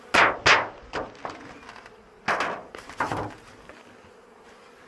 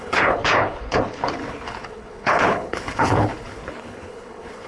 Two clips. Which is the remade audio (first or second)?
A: second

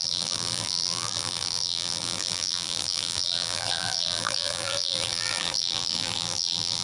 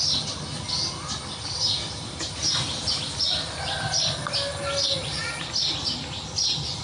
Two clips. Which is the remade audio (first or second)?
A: first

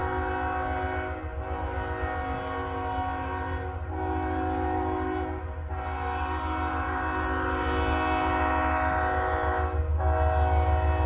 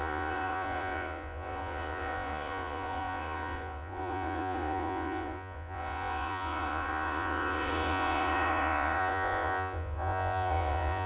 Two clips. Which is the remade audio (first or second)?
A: second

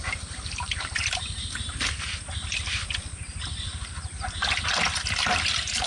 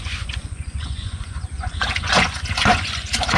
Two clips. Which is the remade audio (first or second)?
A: second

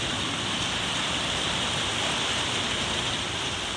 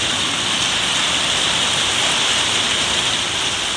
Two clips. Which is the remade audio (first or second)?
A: first